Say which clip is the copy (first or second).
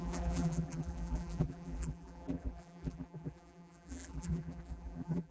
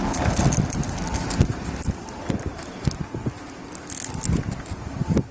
first